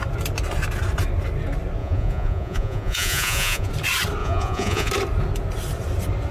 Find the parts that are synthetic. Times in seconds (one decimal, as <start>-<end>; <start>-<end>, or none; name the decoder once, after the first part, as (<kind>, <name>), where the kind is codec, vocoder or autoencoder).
1.8-3.7 (vocoder, Vocos); 4.2-4.9